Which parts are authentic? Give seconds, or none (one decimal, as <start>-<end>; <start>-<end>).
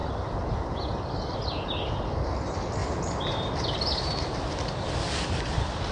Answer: 0.0-5.9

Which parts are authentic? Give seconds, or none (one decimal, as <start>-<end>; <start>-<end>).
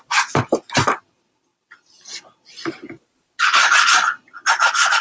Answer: 0.0-5.0